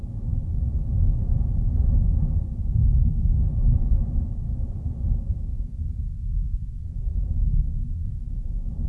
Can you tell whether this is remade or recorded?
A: remade